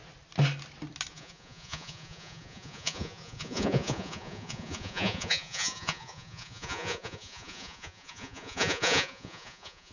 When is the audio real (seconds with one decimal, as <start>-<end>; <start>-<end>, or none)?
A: 0.0-1.1